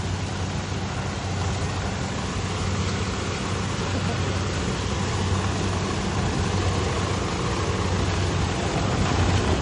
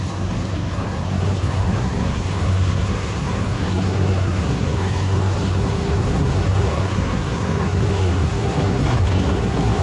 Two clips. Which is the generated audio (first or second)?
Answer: second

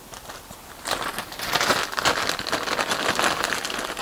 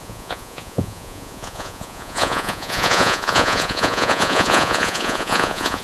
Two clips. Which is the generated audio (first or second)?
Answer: second